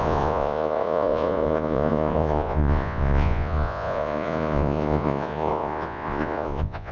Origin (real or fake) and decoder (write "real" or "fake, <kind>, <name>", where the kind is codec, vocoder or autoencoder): fake, vocoder, Vocos